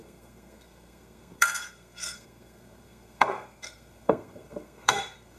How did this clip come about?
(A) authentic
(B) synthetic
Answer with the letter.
B